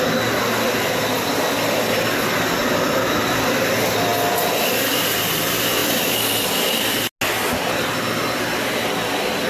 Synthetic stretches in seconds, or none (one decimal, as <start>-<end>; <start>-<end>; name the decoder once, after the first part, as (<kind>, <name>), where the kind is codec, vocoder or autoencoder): none